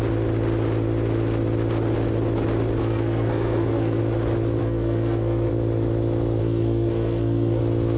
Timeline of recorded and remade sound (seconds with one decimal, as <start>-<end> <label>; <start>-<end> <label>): 0.0-2.8 recorded; 2.8-4.0 remade; 4.0-4.6 recorded; 4.6-5.5 remade; 5.5-6.4 recorded; 6.4-7.6 remade; 7.6-8.0 recorded